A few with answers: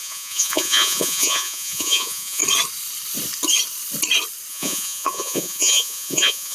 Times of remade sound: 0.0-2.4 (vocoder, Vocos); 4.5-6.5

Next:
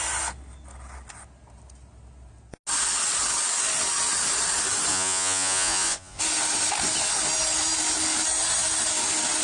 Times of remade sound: 4.9-6.2 (vocoder, Vocos)